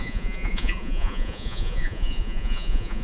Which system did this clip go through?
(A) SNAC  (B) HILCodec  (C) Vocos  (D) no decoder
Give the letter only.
C